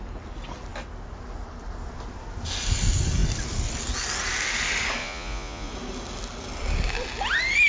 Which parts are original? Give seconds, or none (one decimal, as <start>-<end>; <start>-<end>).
0.0-5.0; 5.7-7.7